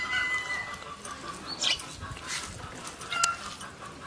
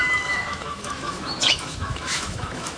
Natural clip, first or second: first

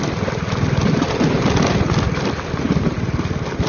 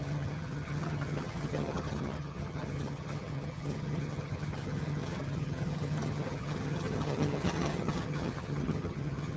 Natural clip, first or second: first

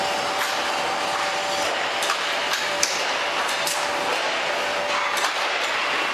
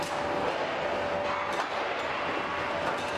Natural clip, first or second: second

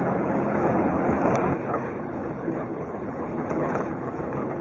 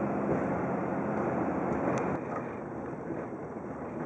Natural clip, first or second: second